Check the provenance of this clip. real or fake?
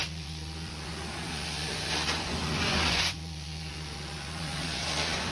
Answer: fake